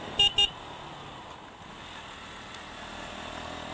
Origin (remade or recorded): recorded